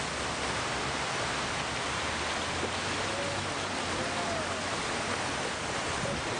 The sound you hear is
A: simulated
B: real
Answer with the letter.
B